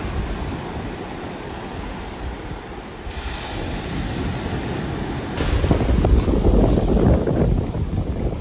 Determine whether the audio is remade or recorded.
recorded